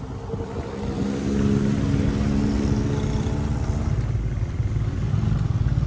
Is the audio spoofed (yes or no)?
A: no